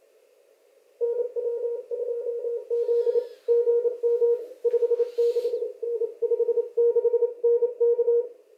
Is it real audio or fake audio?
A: real